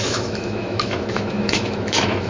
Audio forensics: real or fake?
fake